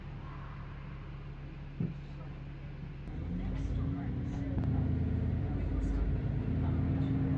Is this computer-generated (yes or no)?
no